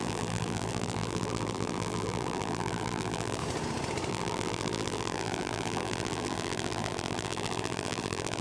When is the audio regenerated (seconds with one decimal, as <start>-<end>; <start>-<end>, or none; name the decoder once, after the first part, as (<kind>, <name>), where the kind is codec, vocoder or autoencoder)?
0.0-3.4 (vocoder, BigVGAN v2); 4.1-8.4